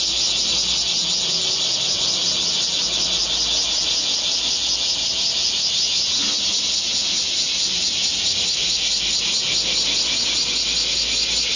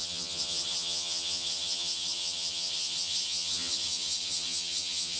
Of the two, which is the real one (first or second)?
first